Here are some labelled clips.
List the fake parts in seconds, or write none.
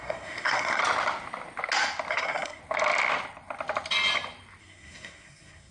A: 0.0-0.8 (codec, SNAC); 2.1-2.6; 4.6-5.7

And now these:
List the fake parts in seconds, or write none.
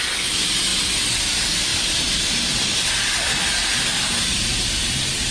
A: none